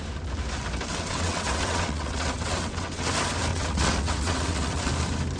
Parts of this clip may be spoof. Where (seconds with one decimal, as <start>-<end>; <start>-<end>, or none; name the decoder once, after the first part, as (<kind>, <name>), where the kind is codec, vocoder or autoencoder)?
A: 0.9-3.1 (vocoder, WaveNeXt); 3.5-4.9